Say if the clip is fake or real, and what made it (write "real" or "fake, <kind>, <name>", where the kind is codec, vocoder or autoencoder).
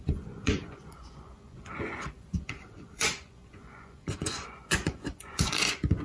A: fake, vocoder, Vocos